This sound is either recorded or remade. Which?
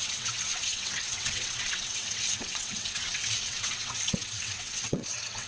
remade